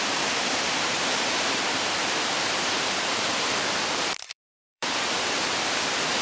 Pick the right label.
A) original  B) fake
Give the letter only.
B